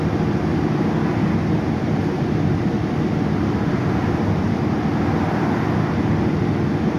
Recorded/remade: recorded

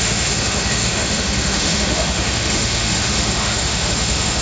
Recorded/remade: remade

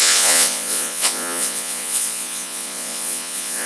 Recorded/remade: remade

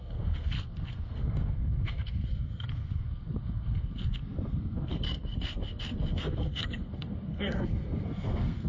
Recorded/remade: remade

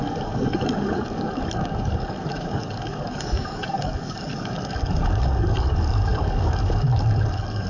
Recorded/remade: remade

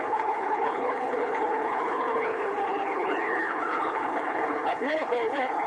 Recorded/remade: remade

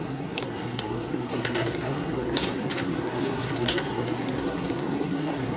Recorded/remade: remade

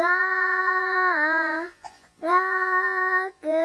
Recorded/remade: remade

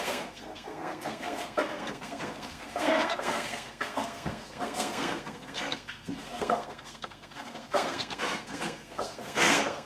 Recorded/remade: remade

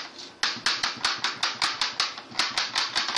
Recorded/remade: recorded